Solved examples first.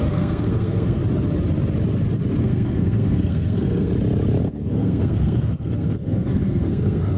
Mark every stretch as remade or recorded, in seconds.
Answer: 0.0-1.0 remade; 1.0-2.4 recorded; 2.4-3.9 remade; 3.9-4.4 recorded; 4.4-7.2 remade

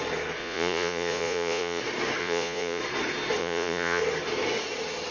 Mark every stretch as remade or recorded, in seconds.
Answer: 0.0-0.4 recorded; 0.4-1.8 remade; 1.8-2.2 recorded; 2.2-2.8 remade; 2.8-3.4 recorded; 3.4-4.0 remade; 4.0-5.1 recorded

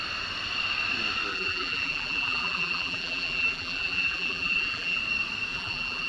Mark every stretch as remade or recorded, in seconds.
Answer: 0.0-1.3 recorded; 1.3-5.0 remade; 5.0-5.5 recorded; 5.5-6.1 remade